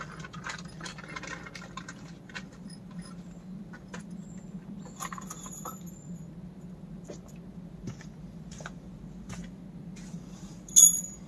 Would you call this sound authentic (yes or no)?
yes